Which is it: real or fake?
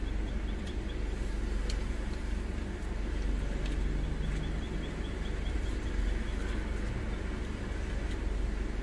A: real